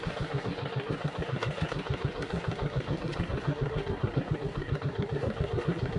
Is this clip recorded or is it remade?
remade